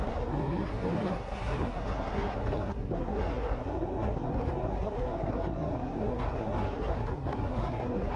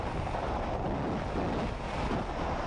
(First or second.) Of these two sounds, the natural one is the second